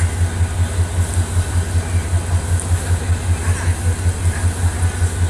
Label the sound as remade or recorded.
recorded